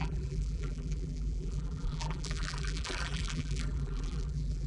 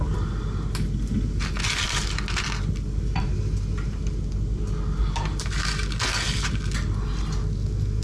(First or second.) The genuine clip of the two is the second